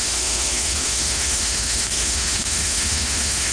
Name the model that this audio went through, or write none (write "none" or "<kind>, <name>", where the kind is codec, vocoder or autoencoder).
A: autoencoder, DAC-VAE